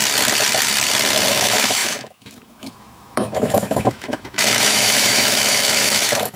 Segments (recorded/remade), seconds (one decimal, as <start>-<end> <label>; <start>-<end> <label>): 0.0-1.3 recorded; 1.3-6.4 remade